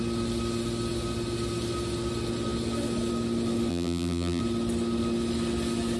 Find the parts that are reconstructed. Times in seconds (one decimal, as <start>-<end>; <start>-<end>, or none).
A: 3.7-4.4